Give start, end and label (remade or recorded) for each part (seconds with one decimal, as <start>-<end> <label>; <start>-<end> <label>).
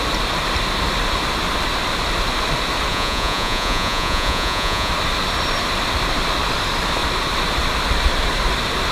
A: 0.0-2.9 recorded; 2.9-4.9 remade; 4.9-8.9 recorded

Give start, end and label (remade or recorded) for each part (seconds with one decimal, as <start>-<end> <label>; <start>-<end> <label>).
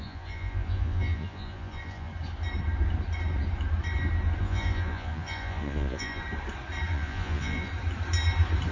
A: 0.0-2.1 remade; 2.1-4.4 recorded; 4.4-6.2 remade; 6.2-6.9 recorded; 6.9-7.7 remade; 7.7-8.7 recorded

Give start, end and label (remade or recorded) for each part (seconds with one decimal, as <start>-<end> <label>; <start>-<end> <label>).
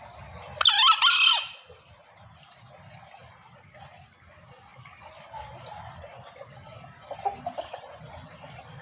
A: 0.0-8.8 recorded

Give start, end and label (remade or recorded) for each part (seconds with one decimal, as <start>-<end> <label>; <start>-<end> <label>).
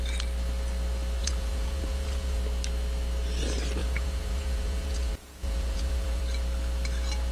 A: 0.0-1.2 recorded; 1.2-2.4 remade; 2.4-3.8 recorded; 3.8-6.2 remade; 6.2-7.3 recorded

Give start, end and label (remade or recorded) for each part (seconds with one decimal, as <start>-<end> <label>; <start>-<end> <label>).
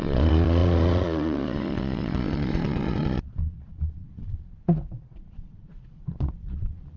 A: 0.0-7.0 remade